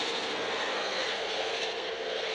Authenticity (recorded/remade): remade